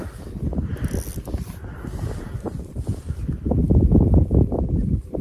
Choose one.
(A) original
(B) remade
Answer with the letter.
A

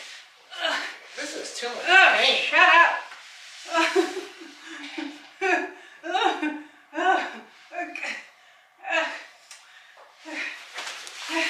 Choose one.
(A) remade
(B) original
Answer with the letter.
A